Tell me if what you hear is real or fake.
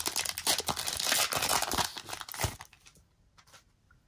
real